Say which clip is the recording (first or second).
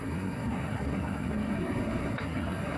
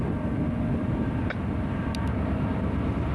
second